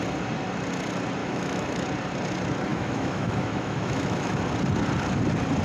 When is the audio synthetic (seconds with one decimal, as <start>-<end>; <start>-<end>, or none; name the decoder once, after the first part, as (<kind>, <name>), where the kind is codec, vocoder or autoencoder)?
1.2-1.8 (autoencoder, DAC-VAE); 2.7-4.4